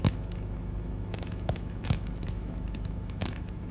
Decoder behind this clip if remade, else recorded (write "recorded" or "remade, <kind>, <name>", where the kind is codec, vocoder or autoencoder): remade, autoencoder, DAC-VAE